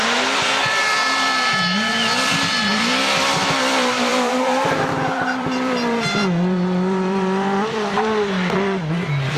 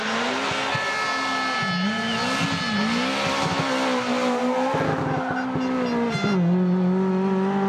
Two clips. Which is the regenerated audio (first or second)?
first